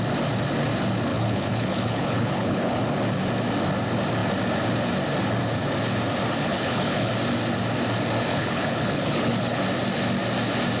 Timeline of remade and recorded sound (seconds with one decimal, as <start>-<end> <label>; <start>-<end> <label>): 0.0-1.1 recorded; 1.1-2.8 remade; 2.8-6.5 recorded; 6.5-7.1 remade; 7.1-8.3 recorded; 8.3-9.6 remade; 9.6-10.8 recorded